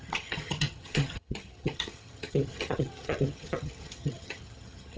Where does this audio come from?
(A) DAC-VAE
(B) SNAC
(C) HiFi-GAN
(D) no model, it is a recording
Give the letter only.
C